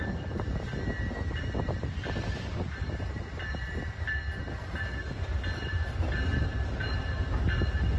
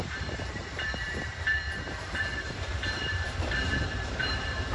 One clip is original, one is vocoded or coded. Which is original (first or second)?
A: first